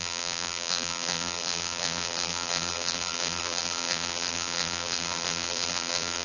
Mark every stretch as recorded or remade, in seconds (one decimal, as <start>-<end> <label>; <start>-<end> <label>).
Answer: 0.0-6.2 remade